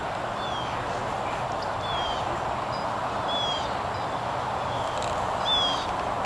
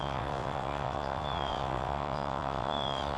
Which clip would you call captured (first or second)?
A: first